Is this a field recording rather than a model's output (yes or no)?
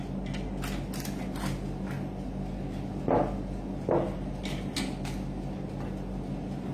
yes